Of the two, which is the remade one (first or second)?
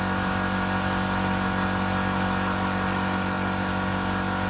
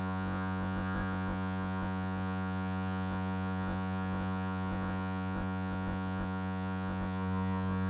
second